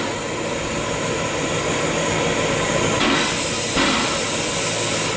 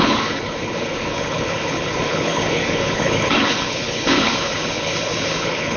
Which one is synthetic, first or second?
second